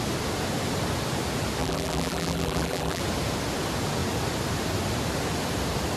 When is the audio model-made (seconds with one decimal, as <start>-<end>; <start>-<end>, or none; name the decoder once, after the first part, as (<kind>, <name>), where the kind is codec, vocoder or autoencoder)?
1.6-3.0 (vocoder, BigVGAN v2)

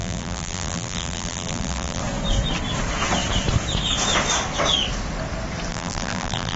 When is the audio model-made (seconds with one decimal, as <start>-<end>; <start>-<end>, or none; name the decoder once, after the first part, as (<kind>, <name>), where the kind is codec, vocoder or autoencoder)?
0.0-2.0 (vocoder, BigVGAN v2); 5.7-6.6